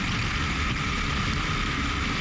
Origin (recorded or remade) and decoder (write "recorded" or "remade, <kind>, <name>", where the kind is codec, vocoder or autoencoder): recorded